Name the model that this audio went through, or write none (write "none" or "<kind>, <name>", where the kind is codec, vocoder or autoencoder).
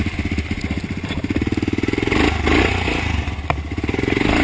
none